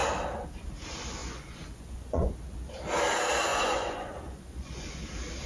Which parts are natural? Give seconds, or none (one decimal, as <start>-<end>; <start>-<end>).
0.0-1.2; 2.3-3.5; 5.0-5.5